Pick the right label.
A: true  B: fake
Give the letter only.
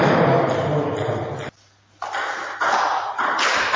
A